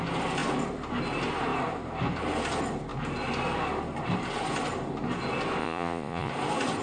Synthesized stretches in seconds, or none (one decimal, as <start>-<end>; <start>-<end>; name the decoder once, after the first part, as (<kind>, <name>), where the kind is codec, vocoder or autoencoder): 5.6-6.3 (vocoder, Vocos)